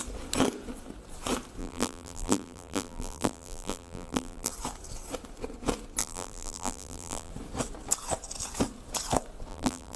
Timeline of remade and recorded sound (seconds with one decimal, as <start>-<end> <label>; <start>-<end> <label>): 0.0-1.6 recorded; 1.6-4.5 remade; 4.5-6.0 recorded; 6.0-7.3 remade; 7.3-9.5 recorded; 9.5-10.0 remade